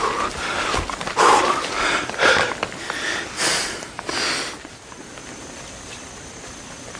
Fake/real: real